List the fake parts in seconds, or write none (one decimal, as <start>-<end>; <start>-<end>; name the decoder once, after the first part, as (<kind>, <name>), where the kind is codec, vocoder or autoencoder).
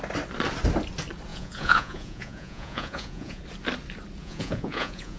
1.3-3.4 (vocoder, Vocos); 4.2-5.2